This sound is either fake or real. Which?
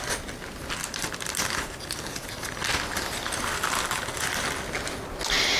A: real